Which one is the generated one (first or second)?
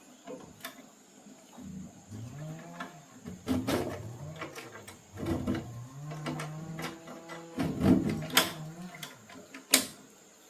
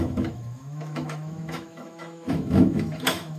second